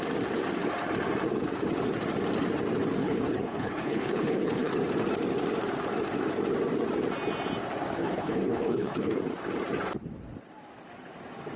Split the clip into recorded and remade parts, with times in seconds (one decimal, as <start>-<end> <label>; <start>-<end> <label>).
0.0-3.0 recorded; 3.0-4.7 remade; 4.7-8.0 recorded; 8.0-9.2 remade; 9.2-11.6 recorded